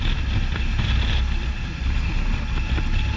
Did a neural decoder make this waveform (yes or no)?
no